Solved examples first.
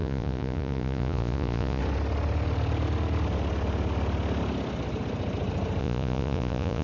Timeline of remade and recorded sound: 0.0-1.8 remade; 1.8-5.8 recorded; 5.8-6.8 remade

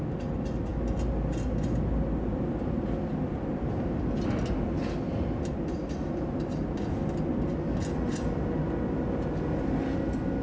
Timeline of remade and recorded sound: 0.0-10.4 recorded

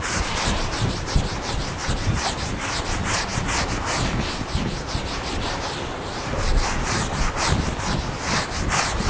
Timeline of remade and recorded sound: 0.0-9.1 recorded

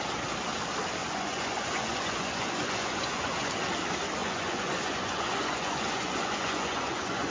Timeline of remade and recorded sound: 0.0-1.0 recorded; 1.0-3.5 remade; 3.5-4.2 recorded; 4.2-7.3 remade